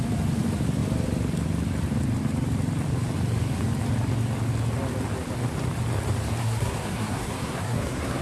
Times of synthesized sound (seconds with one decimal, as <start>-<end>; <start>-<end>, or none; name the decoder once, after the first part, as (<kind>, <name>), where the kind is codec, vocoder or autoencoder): 6.4-8.2 (codec, SNAC)